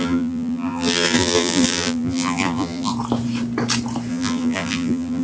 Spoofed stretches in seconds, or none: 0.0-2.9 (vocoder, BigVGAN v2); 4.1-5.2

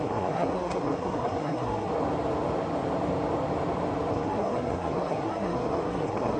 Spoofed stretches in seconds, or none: 0.0-1.9 (codec, SNAC); 4.1-6.4

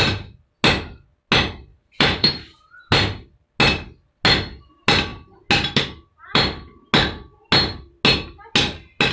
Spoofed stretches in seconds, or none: 1.7-2.8 (vocoder, BigVGAN v2)

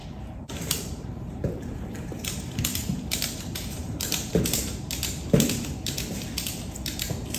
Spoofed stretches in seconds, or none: 0.0-4.4 (vocoder, BigVGAN v2)

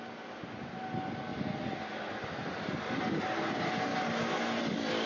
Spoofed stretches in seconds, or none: none